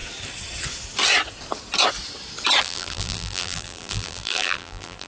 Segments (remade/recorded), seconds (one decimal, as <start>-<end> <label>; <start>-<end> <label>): 0.0-2.6 recorded; 2.6-5.1 remade